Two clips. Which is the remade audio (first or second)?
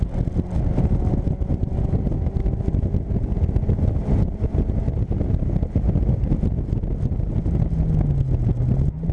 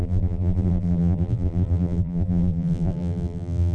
second